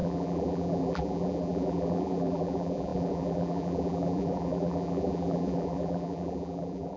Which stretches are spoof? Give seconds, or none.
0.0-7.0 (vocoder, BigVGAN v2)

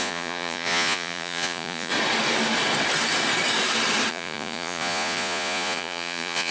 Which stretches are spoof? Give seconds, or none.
0.0-1.9 (vocoder, Vocos); 4.1-6.5